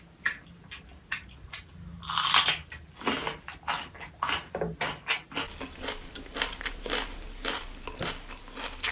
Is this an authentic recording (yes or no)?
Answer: yes